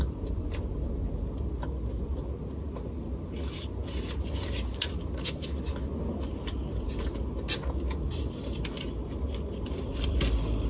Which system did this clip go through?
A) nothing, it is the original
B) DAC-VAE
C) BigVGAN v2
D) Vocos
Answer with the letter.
A